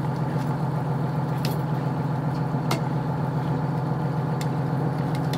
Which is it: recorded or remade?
recorded